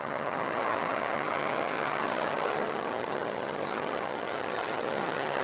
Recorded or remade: remade